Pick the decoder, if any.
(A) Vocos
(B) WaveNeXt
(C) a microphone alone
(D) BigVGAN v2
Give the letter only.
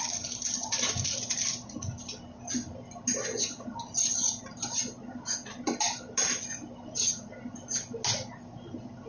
C